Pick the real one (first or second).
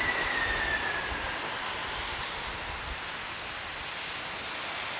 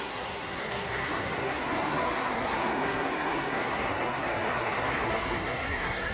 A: first